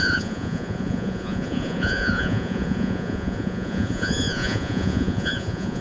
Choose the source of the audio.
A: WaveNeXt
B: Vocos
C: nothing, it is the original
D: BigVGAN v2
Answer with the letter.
B